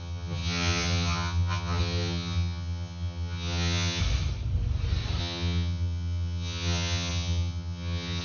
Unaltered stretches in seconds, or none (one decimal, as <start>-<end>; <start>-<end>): 4.0-5.2